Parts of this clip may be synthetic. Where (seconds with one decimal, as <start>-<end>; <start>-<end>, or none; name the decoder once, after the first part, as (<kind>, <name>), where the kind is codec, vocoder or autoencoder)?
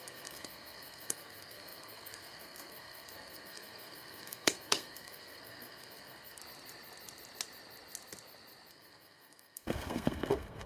0.0-6.4 (codec, SNAC); 8.7-10.7